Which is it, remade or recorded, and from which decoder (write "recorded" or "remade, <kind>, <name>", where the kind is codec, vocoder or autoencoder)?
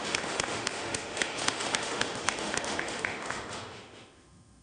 remade, autoencoder, DAC-VAE